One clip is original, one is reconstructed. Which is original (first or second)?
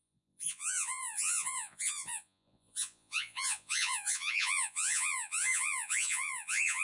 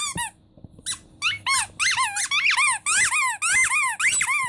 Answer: second